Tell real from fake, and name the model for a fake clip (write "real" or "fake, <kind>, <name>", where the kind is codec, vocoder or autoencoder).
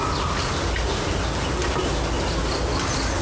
real